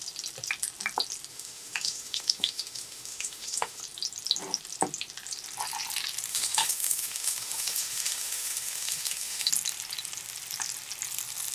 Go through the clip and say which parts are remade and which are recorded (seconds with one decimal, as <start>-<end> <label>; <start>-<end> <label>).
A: 0.0-1.3 recorded; 1.3-3.8 remade; 3.8-6.3 recorded; 6.3-9.5 remade; 9.5-11.5 recorded